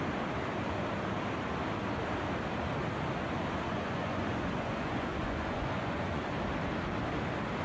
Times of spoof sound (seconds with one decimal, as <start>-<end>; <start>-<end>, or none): 3.7-6.2